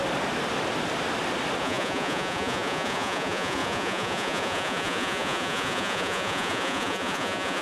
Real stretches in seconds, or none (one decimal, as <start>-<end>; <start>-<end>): 0.0-1.6